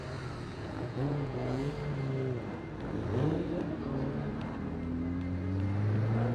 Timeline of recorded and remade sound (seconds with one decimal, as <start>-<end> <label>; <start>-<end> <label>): 0.0-0.5 recorded; 0.5-1.7 remade; 1.7-6.3 recorded